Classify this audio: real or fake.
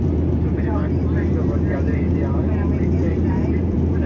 fake